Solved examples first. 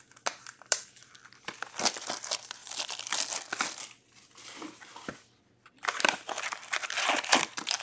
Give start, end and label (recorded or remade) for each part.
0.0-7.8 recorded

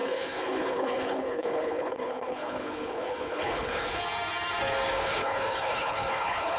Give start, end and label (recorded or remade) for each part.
0.0-4.0 remade; 4.0-4.9 recorded; 4.9-6.6 remade

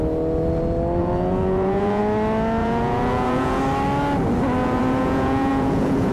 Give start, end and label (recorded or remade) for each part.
0.0-1.0 recorded; 1.0-2.0 remade; 2.0-2.6 recorded; 2.6-3.6 remade; 3.6-4.6 recorded; 4.6-6.1 remade

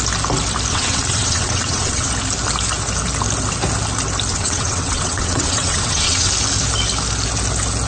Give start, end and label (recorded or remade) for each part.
0.0-0.7 recorded; 0.7-2.1 remade; 2.1-4.3 recorded; 4.3-6.3 remade; 6.3-7.9 recorded

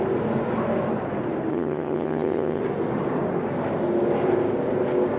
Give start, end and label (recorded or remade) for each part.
0.0-1.5 recorded; 1.5-2.6 remade; 2.6-5.2 recorded

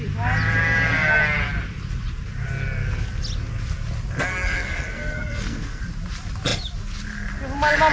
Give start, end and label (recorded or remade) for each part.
0.0-4.3 recorded; 4.3-5.8 remade; 5.8-7.9 recorded

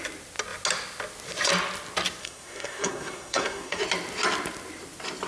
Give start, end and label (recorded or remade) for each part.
0.0-2.2 recorded; 2.2-3.8 remade; 3.8-5.3 recorded

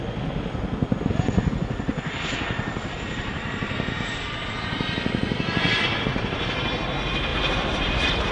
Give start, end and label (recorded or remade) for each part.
0.0-1.9 recorded; 1.9-4.8 remade; 4.8-6.1 recorded; 6.1-6.7 remade; 6.7-7.3 recorded; 7.3-8.3 remade